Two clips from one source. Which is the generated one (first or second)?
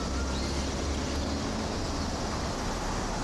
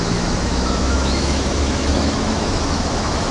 second